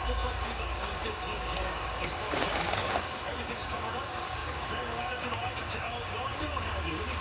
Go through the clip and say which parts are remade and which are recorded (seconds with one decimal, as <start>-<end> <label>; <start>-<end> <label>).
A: 0.0-7.2 remade